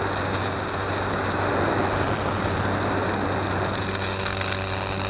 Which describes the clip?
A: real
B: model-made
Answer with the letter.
A